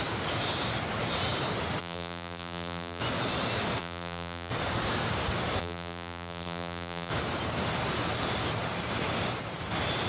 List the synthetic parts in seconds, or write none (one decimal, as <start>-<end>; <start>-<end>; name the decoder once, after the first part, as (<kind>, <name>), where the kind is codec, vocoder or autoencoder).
1.8-3.0 (vocoder, BigVGAN v2); 3.8-4.5; 5.6-7.1